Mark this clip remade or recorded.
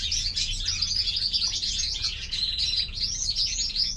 remade